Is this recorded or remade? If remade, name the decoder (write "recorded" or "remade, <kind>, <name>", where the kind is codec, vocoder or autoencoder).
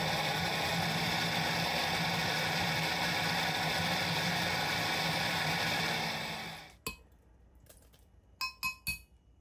recorded